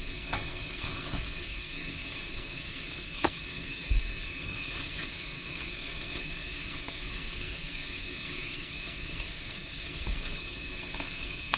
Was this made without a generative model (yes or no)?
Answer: no